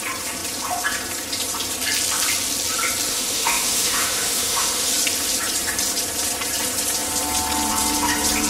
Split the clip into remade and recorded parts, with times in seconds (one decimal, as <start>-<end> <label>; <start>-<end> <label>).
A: 0.0-3.1 recorded; 3.1-4.9 remade; 4.9-8.5 recorded